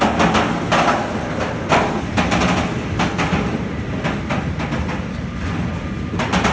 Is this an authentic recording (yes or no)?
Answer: yes